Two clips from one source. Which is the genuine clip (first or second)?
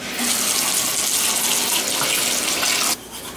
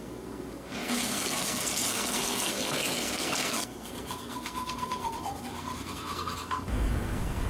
first